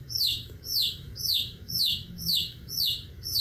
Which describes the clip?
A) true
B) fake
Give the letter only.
B